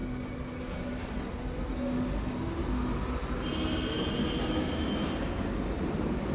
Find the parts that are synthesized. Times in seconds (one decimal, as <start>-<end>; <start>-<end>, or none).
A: none